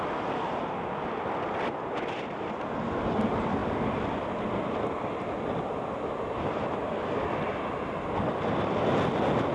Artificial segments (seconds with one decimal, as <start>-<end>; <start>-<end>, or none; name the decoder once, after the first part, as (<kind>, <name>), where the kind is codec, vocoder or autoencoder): none